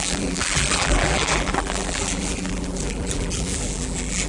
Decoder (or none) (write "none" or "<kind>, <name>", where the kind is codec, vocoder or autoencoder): vocoder, BigVGAN v2